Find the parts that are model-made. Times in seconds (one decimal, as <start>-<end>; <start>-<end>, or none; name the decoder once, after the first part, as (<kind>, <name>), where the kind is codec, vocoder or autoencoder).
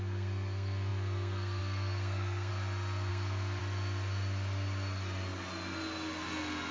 0.0-2.5 (codec, SNAC); 3.1-3.6